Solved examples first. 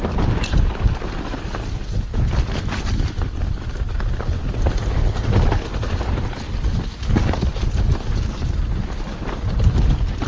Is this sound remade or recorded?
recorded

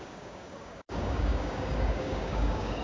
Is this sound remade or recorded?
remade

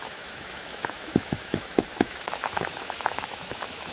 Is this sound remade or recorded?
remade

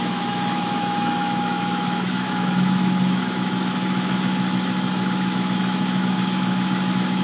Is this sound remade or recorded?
remade